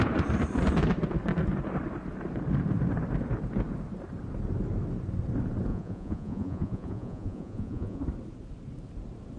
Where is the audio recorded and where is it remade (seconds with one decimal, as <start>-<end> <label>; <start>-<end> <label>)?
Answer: 0.0-5.7 recorded; 5.7-8.0 remade; 8.0-9.4 recorded